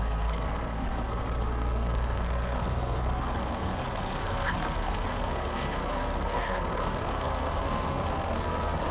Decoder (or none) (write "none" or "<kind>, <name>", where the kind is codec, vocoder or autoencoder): codec, SNAC